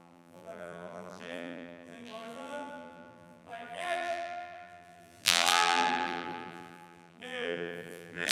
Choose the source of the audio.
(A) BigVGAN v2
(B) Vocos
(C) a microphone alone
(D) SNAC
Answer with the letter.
A